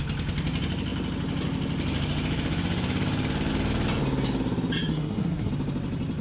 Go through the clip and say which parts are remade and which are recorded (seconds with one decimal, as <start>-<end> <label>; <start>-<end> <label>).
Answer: 0.0-4.9 recorded; 4.9-5.5 remade; 5.5-6.2 recorded